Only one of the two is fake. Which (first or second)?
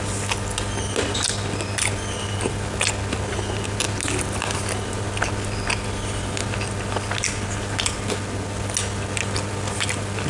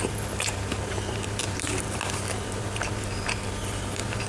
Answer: second